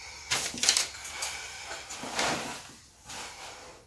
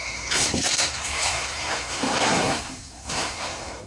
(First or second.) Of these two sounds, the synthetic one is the second